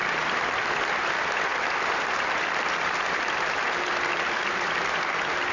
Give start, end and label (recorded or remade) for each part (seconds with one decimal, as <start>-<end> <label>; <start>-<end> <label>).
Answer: 0.0-5.5 recorded